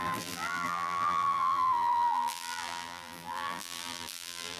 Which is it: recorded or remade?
remade